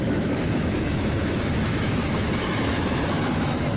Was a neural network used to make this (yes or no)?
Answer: yes